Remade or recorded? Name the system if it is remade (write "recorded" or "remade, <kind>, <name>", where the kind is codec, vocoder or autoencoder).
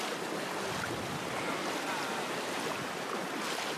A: recorded